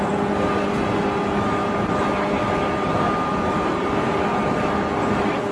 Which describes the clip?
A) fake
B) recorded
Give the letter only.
B